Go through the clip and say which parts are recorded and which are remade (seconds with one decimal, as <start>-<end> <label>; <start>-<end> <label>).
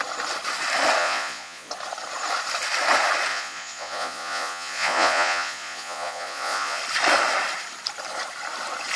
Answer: 0.0-1.0 recorded; 1.0-1.7 remade; 1.7-3.3 recorded; 3.3-6.8 remade; 6.8-9.0 recorded